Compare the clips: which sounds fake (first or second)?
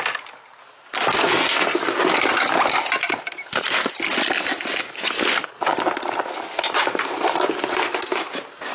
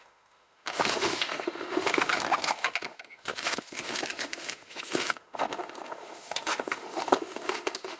second